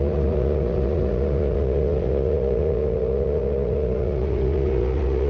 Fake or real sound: fake